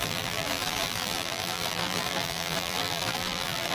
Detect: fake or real fake